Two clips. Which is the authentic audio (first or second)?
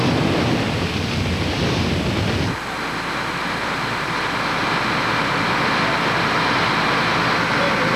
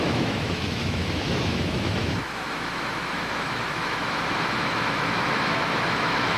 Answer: first